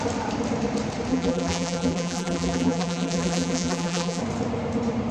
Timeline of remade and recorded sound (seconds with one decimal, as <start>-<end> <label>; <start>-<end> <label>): 0.0-1.1 recorded; 1.1-4.2 remade; 4.2-5.1 recorded